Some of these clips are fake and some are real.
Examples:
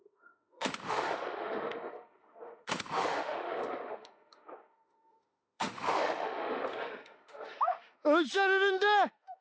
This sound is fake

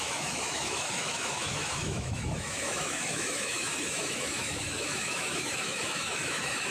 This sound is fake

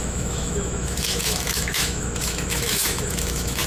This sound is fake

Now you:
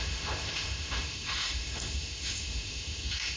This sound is fake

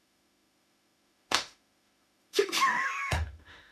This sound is fake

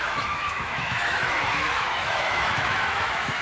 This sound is fake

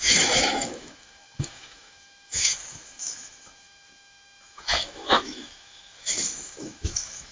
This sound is fake